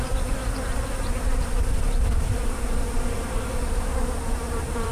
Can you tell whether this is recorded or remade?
remade